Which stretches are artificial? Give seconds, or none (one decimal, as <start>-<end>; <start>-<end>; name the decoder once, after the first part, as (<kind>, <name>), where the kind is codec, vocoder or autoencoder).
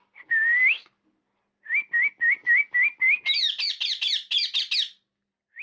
none